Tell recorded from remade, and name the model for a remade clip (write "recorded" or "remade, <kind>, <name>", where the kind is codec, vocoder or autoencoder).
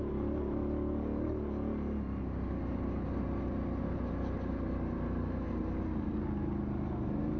recorded